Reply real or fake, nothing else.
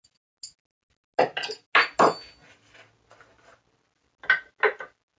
real